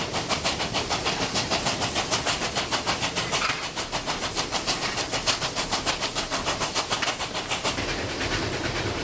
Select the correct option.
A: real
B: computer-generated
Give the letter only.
A